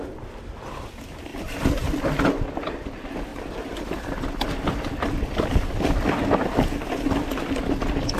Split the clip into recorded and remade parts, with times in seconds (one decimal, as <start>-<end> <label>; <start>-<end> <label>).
0.0-1.3 recorded; 1.3-2.0 remade; 2.0-3.3 recorded; 3.3-6.7 remade; 6.7-8.2 recorded